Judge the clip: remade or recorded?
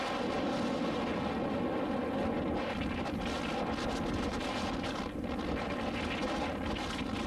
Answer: recorded